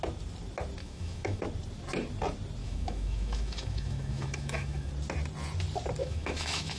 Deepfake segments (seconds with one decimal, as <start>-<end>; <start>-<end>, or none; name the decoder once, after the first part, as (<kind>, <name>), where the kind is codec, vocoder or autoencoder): 0.8-1.4 (autoencoder, DAC-VAE); 2.6-4.9; 6.0-6.8